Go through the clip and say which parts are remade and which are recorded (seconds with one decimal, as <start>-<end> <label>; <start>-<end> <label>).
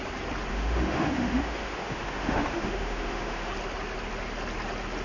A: 0.0-0.5 recorded; 0.5-3.5 remade; 3.5-5.0 recorded